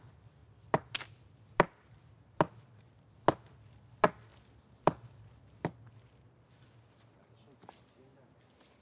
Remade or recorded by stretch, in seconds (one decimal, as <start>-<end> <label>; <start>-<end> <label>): 0.0-8.8 recorded